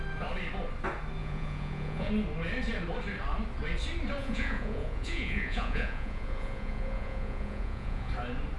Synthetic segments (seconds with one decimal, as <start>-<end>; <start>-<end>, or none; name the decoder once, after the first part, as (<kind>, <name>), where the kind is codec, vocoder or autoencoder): 1.2-2.1 (vocoder, Vocos); 4.2-8.1